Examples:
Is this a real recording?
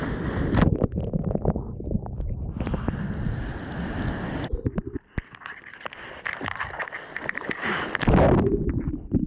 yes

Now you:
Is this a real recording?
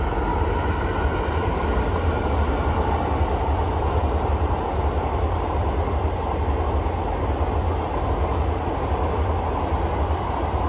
yes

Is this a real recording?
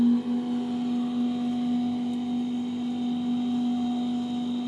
yes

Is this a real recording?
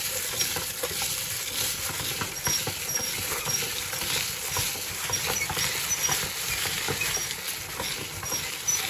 yes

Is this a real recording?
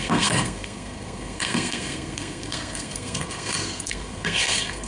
no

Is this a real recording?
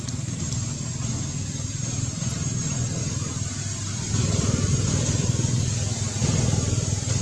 yes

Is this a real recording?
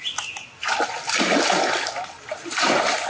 yes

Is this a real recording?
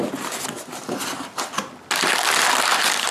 yes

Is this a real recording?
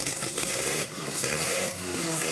no